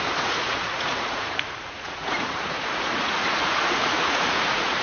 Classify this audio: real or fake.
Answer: fake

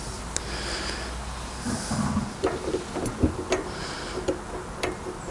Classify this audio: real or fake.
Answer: real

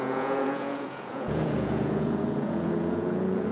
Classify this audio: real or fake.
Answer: fake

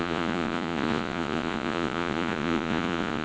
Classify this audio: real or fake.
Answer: fake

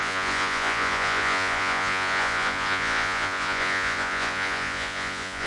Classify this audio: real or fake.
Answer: fake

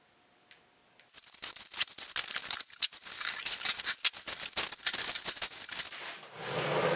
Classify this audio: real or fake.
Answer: real